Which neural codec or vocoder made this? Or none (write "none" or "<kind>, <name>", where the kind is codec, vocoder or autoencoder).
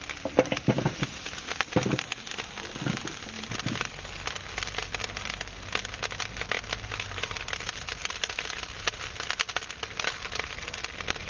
none